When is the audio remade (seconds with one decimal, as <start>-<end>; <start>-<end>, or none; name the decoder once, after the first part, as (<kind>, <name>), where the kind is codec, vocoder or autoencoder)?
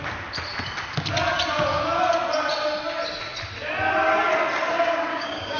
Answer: 5.1-5.6 (codec, DAC)